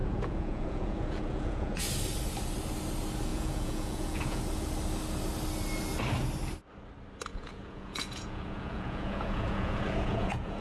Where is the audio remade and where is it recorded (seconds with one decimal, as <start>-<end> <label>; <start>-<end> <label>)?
0.0-1.8 remade; 1.8-3.3 recorded; 3.3-4.4 remade; 4.4-7.3 recorded; 7.3-10.6 remade